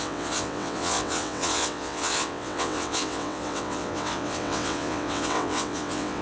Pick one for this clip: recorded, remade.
remade